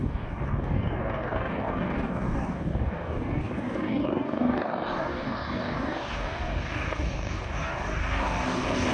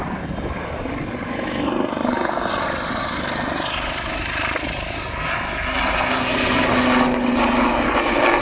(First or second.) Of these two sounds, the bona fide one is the second